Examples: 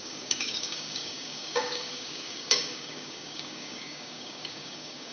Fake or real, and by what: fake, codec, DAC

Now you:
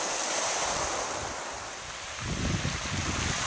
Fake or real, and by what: real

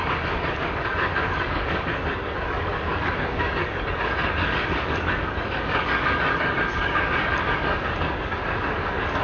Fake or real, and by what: fake, codec, DAC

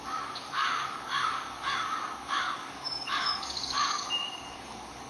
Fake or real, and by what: fake, codec, DAC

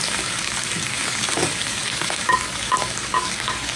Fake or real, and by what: fake, codec, DAC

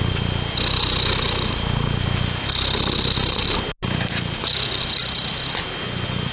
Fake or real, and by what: real